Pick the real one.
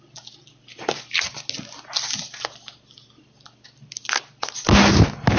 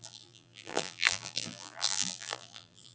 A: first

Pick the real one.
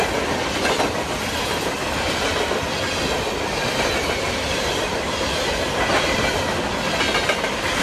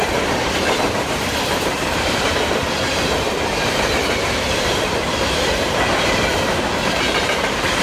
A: first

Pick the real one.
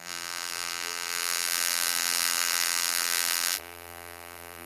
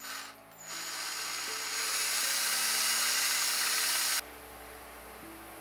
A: second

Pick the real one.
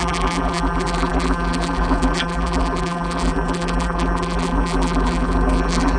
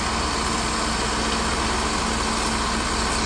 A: second